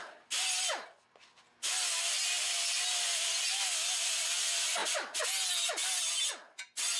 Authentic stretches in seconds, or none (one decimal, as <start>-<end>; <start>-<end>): 0.0-7.0